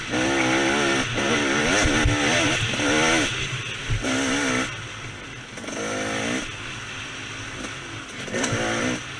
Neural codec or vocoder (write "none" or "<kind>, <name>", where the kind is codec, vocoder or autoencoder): none